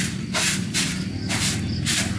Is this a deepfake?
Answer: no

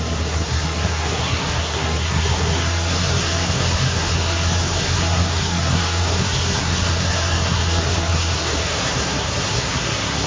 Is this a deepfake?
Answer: yes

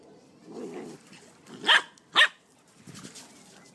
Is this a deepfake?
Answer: no